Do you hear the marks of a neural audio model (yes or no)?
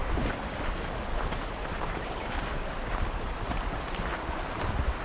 yes